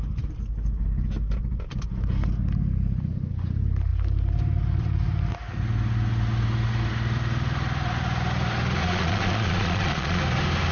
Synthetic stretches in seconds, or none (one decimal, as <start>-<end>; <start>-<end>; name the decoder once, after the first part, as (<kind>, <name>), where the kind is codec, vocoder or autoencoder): 8.8-10.2 (vocoder, Vocos)